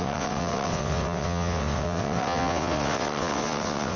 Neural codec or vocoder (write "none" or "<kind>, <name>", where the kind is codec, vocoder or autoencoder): vocoder, WaveNeXt